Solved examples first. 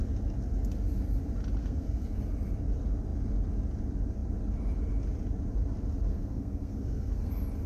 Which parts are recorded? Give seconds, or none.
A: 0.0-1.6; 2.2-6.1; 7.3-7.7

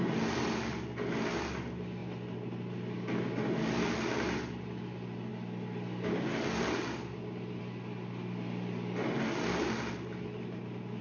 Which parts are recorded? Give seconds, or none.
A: 0.0-11.0

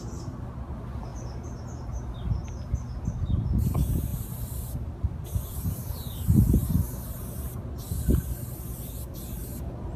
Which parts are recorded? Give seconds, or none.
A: 0.0-4.1; 7.6-10.0

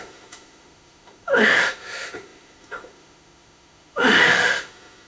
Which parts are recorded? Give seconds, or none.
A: none